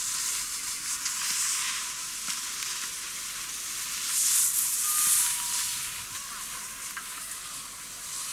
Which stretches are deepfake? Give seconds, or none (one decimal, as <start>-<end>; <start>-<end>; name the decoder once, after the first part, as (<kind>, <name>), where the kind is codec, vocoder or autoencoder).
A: none

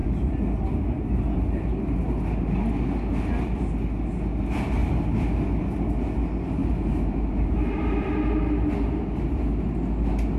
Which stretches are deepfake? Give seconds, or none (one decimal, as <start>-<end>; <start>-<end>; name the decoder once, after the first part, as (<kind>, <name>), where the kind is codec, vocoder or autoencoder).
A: 6.6-9.2 (vocoder, BigVGAN v2)